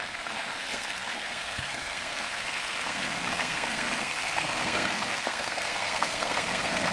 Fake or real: fake